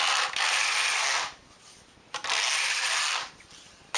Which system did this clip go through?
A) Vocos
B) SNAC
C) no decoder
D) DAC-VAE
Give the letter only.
C